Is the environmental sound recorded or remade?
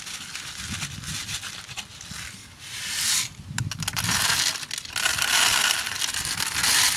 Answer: recorded